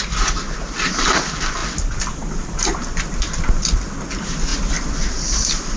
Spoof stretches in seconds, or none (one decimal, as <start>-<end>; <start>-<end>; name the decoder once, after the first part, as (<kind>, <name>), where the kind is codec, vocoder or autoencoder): none